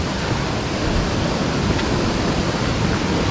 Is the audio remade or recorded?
recorded